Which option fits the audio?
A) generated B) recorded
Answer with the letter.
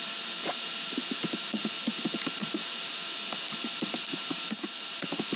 A